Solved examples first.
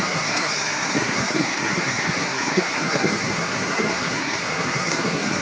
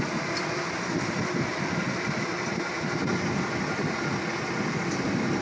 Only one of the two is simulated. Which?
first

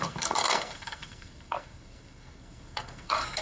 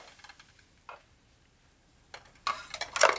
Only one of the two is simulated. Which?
first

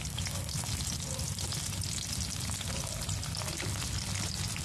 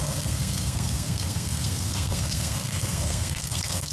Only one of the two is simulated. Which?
second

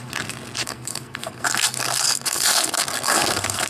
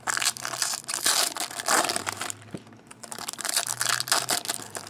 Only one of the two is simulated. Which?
first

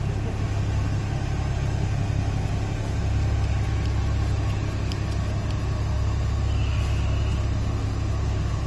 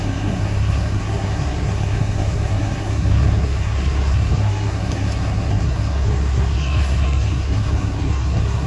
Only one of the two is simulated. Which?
second